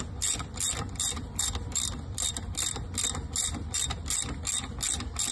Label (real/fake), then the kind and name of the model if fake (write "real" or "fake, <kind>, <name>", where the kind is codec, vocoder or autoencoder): real